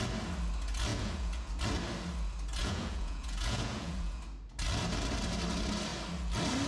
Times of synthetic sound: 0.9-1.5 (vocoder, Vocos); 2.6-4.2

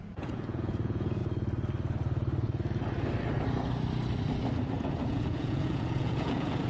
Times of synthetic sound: 0.0-1.2 (vocoder, Vocos); 4.7-6.7

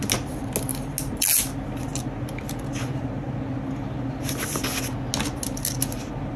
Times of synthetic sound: none

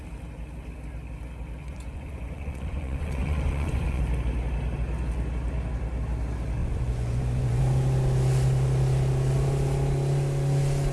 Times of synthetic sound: 1.6-4.0 (vocoder, Vocos); 6.6-7.6